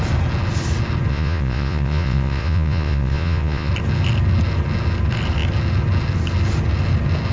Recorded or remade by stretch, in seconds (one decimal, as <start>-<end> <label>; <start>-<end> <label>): 0.0-1.1 recorded; 1.1-3.7 remade; 3.7-7.3 recorded